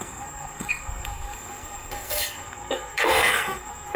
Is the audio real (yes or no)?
no